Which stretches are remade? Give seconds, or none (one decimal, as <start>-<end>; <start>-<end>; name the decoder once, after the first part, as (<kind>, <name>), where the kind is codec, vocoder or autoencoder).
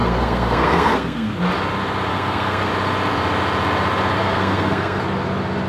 0.0-1.4 (codec, SNAC); 2.1-2.7; 4.2-5.0